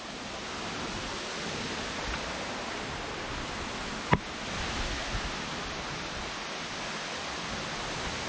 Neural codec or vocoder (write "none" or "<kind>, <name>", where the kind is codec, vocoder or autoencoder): none